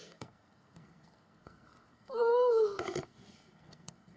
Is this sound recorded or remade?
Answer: remade